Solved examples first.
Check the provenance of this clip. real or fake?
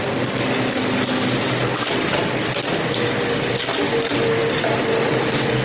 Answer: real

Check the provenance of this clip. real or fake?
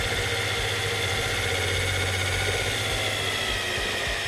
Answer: real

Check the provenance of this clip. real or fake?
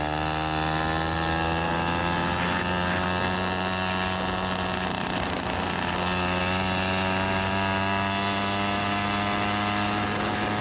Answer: real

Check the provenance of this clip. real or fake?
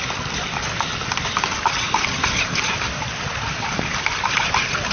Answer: real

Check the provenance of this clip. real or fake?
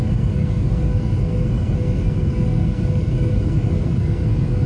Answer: fake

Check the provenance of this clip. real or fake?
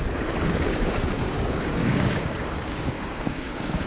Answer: fake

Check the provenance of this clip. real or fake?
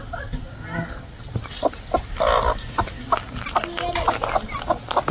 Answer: real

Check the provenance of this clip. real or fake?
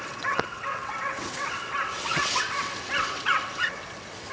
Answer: fake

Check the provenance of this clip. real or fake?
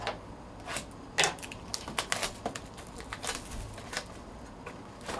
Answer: real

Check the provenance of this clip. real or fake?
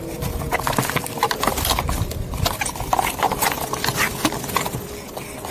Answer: real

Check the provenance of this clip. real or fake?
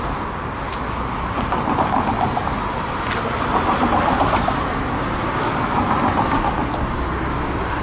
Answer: real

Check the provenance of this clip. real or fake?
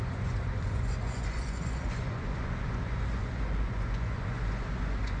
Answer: fake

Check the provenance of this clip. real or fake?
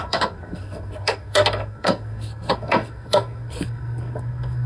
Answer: fake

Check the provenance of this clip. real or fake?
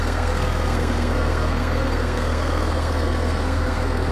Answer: fake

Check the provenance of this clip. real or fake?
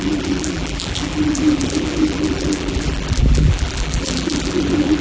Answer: fake